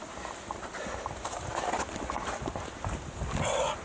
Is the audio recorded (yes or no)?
yes